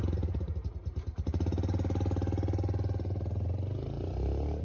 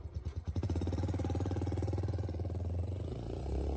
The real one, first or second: first